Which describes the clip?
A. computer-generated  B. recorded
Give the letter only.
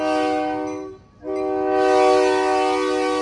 B